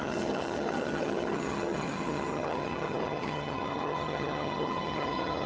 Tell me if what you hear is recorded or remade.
remade